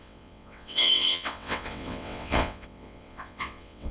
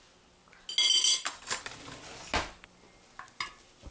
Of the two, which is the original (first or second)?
second